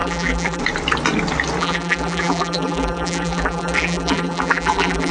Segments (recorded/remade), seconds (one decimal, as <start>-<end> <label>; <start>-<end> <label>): 0.0-0.6 remade; 0.6-1.6 recorded; 1.6-5.1 remade